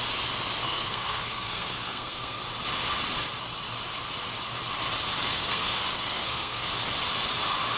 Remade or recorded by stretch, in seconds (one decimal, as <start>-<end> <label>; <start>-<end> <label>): 0.0-0.6 recorded; 0.6-2.4 remade; 2.4-5.3 recorded; 5.3-6.7 remade; 6.7-7.8 recorded